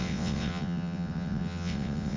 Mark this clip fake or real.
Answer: fake